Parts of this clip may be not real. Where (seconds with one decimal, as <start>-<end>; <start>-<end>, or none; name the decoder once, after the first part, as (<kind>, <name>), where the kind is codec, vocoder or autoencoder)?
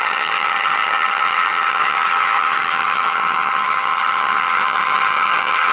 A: 0.0-5.7 (vocoder, HiFi-GAN)